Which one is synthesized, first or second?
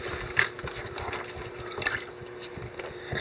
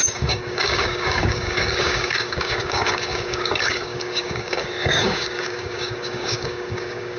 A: second